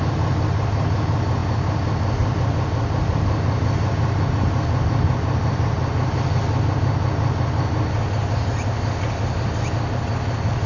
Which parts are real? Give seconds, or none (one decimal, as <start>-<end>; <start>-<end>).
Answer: 0.0-10.7